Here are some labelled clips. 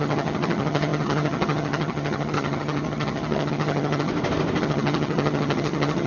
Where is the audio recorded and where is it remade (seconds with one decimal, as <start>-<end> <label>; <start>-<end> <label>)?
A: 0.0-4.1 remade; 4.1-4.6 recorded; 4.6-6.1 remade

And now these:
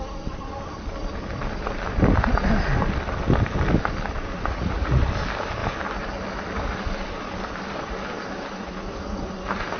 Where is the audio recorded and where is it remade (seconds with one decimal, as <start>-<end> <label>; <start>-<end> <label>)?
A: 0.0-4.3 recorded; 4.3-5.0 remade; 5.0-9.8 recorded

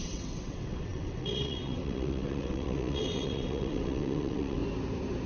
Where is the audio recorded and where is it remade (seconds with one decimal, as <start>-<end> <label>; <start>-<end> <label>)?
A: 0.0-4.6 remade; 4.6-5.3 recorded